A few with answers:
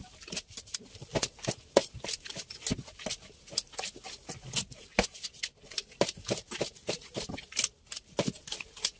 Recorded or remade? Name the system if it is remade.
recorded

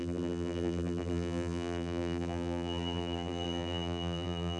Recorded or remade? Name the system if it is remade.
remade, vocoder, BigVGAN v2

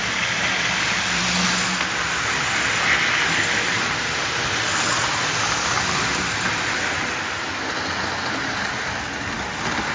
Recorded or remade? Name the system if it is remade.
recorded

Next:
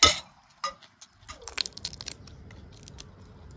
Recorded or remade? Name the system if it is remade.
recorded